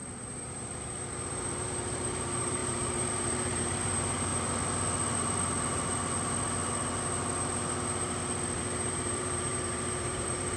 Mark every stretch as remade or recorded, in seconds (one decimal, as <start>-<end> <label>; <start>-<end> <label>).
0.0-4.3 remade; 4.3-8.6 recorded; 8.6-10.6 remade